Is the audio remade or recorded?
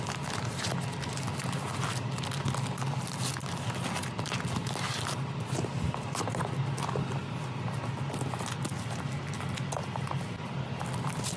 recorded